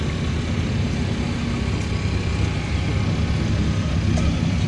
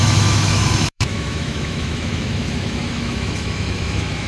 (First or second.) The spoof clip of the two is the second